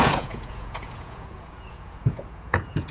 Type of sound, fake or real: fake